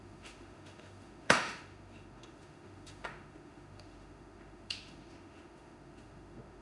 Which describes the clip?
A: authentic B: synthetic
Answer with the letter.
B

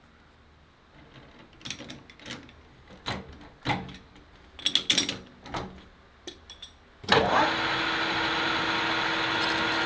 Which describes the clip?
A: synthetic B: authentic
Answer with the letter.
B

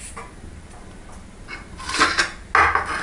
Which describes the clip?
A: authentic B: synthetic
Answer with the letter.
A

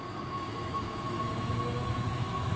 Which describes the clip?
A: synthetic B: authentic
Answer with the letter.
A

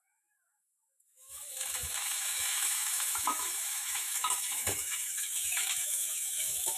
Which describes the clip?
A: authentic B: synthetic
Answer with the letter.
B